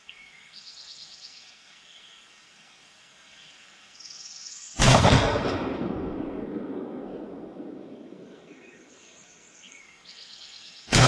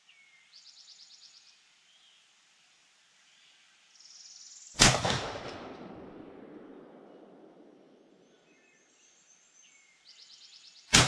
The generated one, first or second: first